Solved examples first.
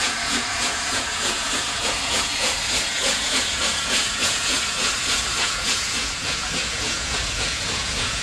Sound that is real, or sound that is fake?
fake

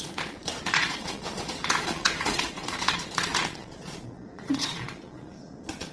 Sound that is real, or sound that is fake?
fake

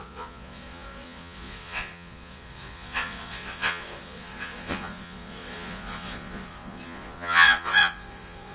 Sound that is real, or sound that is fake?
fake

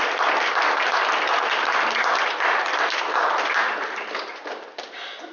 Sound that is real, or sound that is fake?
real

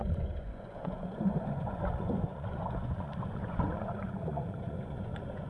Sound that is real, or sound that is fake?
fake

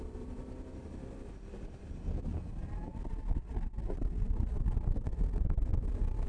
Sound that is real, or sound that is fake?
real